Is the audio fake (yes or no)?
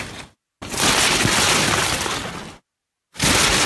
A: no